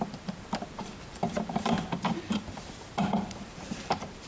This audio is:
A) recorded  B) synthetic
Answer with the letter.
B